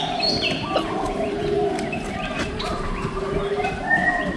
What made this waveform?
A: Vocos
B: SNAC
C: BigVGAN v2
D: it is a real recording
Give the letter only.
C